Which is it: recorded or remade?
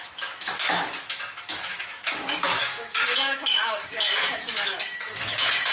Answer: remade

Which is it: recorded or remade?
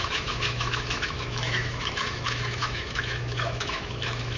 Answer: remade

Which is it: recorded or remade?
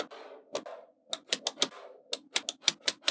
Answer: recorded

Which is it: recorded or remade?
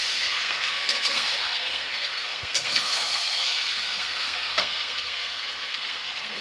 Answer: remade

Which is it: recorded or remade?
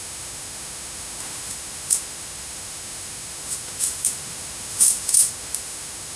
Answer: remade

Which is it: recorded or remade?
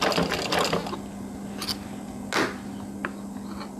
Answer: recorded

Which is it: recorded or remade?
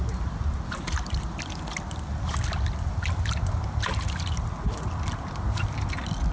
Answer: recorded